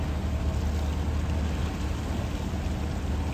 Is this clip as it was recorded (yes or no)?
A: yes